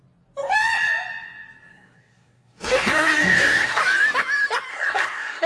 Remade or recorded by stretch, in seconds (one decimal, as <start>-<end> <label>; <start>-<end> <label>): 0.0-1.7 recorded; 1.7-3.8 remade; 3.8-4.7 recorded; 4.7-5.5 remade